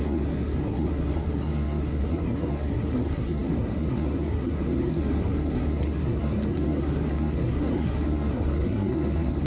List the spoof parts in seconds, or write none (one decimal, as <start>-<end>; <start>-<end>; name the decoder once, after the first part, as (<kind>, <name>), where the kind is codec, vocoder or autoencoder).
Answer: 0.0-9.5 (codec, SNAC)